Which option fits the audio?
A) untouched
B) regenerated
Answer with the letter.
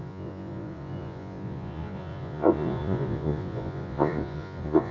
B